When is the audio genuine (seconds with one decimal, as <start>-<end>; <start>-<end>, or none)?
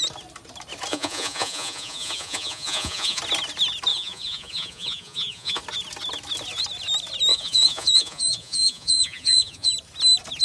0.0-0.9; 3.2-3.9; 5.6-7.3; 9.7-10.4